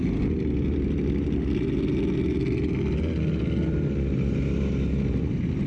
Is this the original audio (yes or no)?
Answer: yes